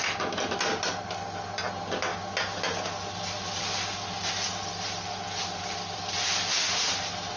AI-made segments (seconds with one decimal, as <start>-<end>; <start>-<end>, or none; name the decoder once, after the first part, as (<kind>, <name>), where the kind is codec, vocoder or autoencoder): none